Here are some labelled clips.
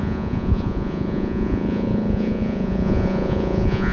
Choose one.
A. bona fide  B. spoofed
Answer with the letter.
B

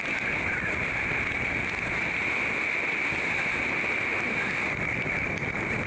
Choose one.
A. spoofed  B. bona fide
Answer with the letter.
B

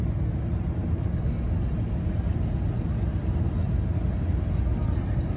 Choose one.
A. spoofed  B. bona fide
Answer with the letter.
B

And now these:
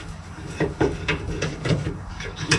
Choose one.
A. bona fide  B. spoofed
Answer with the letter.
B